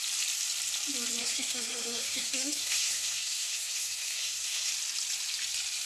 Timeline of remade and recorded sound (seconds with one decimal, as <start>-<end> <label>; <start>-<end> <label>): 0.0-1.2 recorded; 1.2-4.7 remade; 4.7-5.9 recorded